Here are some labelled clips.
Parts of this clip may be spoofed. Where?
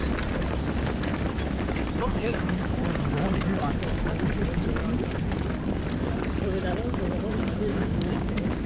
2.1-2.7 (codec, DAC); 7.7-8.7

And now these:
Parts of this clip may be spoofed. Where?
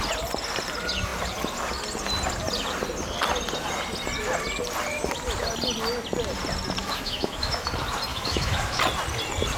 6.8-7.7 (autoencoder, DAC-VAE); 8.1-8.8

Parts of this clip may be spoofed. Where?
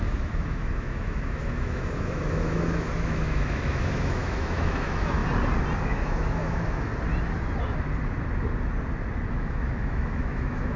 0.0-5.2 (autoencoder, DAC-VAE); 5.8-6.9; 9.3-10.8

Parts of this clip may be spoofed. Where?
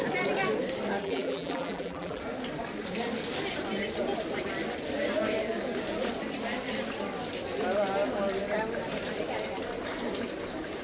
1.0-2.2 (vocoder, BigVGAN v2)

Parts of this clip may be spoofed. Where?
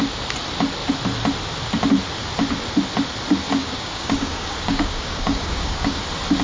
3.6-6.0 (codec, DAC)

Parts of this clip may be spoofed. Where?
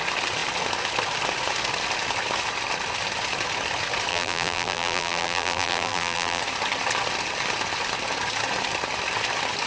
4.1-6.4 (vocoder, BigVGAN v2)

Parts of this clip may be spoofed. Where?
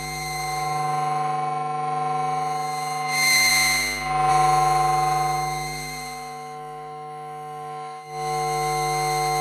0.0-3.5 (autoencoder, DAC-VAE); 4.3-9.4